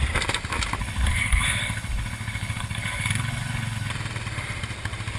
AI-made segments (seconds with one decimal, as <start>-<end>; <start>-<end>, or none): 0.8-3.9